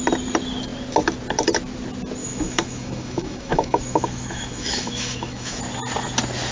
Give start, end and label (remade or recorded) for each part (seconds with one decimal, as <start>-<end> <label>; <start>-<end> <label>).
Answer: 0.0-2.2 recorded; 2.2-5.6 remade; 5.6-6.5 recorded